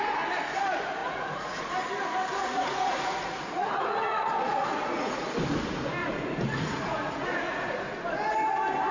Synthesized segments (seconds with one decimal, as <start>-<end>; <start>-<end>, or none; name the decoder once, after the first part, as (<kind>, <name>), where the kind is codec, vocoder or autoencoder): 1.0-1.6 (vocoder, Vocos); 2.4-5.2; 6.0-7.6